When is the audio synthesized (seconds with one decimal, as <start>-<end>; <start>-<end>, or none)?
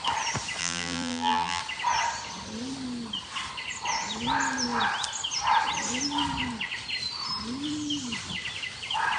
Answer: 0.6-1.6